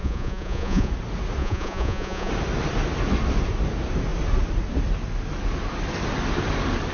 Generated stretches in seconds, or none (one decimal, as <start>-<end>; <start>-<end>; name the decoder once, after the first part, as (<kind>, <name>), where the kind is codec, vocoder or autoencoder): 0.0-0.9 (vocoder, Vocos); 1.4-2.3